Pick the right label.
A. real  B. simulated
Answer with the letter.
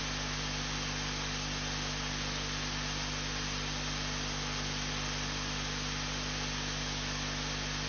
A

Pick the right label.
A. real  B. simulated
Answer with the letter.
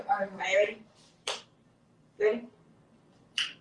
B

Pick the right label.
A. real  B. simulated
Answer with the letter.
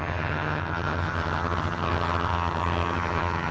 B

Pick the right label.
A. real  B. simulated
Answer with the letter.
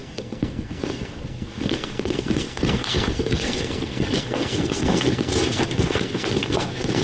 B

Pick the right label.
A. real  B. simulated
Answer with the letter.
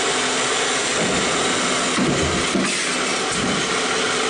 A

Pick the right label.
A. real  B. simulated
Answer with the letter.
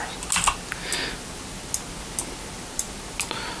A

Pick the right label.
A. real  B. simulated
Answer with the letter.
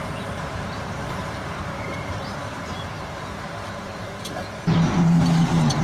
B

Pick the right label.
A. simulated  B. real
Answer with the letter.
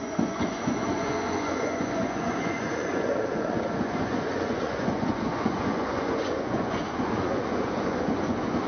A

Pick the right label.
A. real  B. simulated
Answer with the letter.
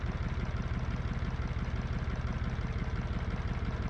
A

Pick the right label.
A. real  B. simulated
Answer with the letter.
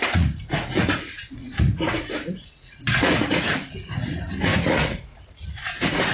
B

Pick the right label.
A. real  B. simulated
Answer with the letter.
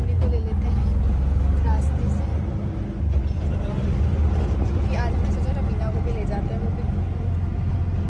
A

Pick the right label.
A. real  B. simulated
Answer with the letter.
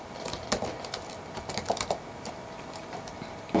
A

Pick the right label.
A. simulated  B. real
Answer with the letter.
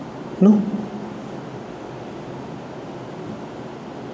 B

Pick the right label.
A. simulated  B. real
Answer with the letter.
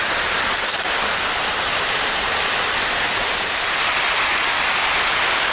B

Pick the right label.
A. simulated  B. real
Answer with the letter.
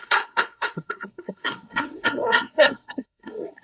A